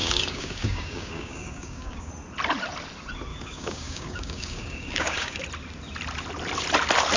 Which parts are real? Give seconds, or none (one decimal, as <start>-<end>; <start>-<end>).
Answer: 2.1-3.3; 5.4-7.2